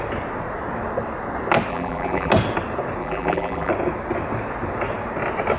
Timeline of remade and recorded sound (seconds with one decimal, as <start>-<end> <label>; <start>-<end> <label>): 0.0-1.7 recorded; 1.7-2.3 remade; 2.3-3.0 recorded; 3.0-3.7 remade; 3.7-5.6 recorded